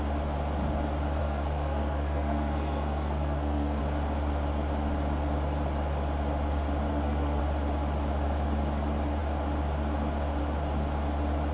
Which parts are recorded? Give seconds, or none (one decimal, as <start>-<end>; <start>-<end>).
0.0-1.2; 3.8-6.9; 7.4-11.5